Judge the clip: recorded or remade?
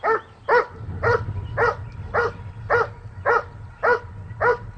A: recorded